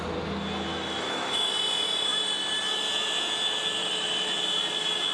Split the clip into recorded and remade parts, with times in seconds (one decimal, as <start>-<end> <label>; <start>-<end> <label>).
0.0-0.7 recorded; 0.7-1.5 remade; 1.5-3.8 recorded; 3.8-4.3 remade; 4.3-5.1 recorded